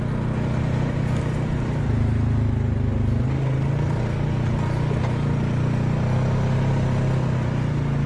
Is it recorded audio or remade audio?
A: recorded